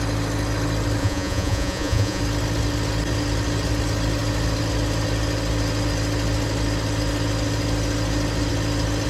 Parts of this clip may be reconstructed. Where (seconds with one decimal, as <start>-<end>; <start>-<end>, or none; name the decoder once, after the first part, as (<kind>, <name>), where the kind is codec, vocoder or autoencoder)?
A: 1.0-2.2 (vocoder, Vocos)

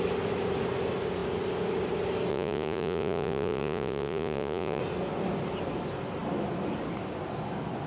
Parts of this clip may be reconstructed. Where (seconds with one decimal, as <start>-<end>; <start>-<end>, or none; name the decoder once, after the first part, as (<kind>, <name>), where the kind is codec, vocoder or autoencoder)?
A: 2.3-4.8 (vocoder, Vocos)